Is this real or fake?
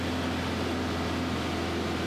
real